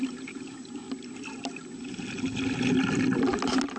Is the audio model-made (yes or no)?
no